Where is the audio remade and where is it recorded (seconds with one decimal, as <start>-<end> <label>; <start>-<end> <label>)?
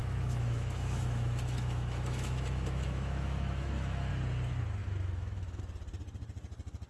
0.0-4.1 remade; 4.1-4.8 recorded; 4.8-5.6 remade; 5.6-6.9 recorded